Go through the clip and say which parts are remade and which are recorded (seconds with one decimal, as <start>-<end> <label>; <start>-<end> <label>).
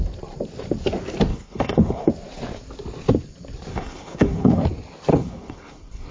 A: 0.0-1.3 recorded; 1.3-2.1 remade; 2.1-3.7 recorded; 3.7-4.6 remade; 4.6-5.1 recorded; 5.1-6.1 remade